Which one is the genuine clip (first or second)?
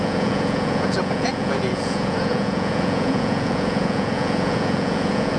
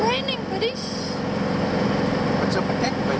second